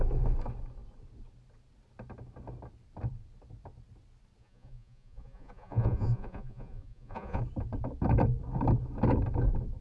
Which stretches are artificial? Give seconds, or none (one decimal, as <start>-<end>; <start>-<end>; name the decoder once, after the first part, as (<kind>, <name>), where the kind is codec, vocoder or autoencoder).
4.4-7.4 (vocoder, Vocos)